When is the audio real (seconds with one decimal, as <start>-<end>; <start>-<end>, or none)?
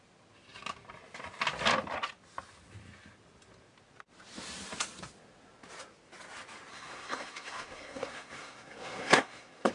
0.0-6.7